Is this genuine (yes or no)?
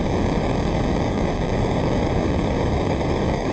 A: no